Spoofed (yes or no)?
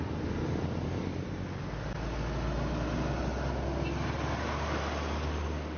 no